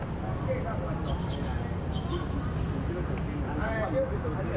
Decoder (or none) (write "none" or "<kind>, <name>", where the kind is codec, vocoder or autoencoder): none